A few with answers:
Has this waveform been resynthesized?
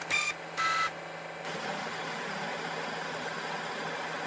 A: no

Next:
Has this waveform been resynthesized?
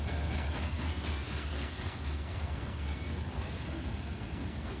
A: yes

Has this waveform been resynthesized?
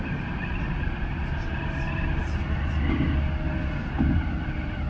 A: no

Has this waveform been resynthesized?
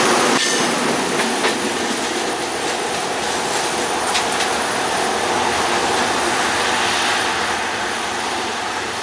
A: no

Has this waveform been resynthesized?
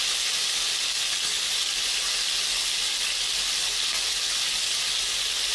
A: no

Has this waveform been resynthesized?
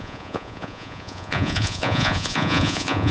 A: yes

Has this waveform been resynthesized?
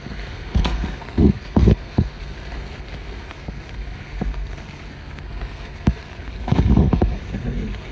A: yes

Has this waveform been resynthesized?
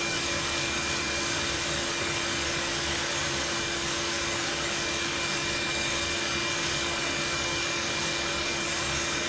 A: yes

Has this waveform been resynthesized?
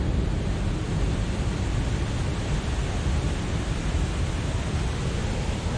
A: no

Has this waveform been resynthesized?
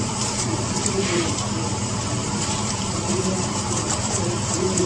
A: yes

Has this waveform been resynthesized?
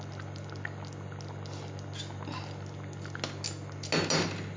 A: no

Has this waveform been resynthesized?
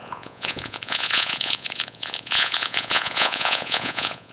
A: yes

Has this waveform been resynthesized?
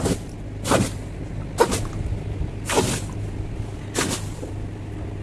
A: no